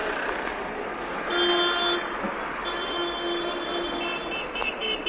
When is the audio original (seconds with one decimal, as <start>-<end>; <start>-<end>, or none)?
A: 0.0-5.1